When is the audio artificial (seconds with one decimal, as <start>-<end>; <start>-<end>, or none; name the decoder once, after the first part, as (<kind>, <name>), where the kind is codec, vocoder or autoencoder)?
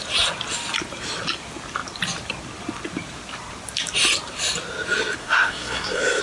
5.2-6.2 (codec, SNAC)